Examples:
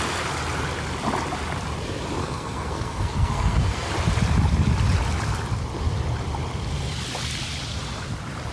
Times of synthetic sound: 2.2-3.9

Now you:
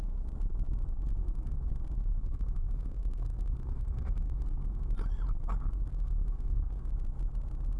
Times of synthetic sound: 1.2-1.7; 2.2-4.9; 5.9-6.9

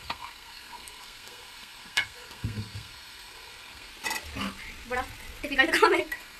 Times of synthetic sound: 0.0-3.9; 6.0-6.4

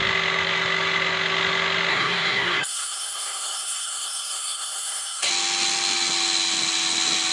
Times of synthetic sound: 1.9-5.3

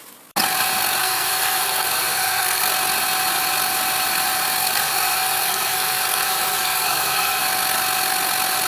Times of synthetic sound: 1.0-2.7; 4.6-7.4

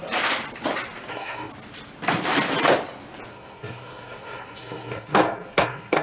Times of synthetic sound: 1.1-1.5; 3.3-6.0

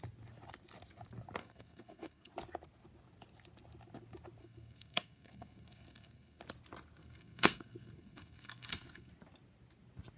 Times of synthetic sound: 1.4-2.3; 4.4-6.4; 7.0-9.1